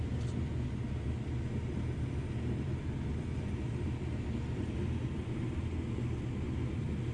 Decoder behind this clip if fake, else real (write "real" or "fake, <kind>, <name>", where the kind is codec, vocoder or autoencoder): real